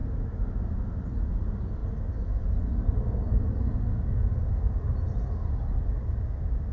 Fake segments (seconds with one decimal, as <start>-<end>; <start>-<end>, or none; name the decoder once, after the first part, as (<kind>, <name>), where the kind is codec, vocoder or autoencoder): none